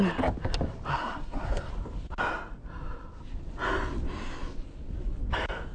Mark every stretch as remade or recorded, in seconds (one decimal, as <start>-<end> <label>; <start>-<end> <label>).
0.0-0.9 recorded; 0.9-1.7 remade; 1.7-5.7 recorded